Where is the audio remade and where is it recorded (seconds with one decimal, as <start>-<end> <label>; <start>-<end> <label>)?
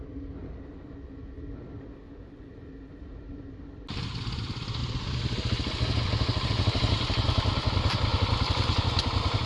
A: 0.0-9.5 recorded